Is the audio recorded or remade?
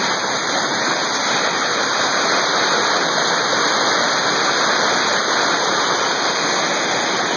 recorded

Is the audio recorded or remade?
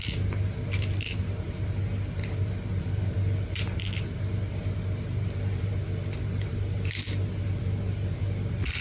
recorded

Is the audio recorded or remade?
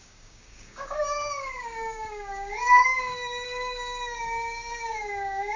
remade